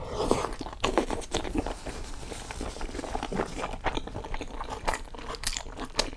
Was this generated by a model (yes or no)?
no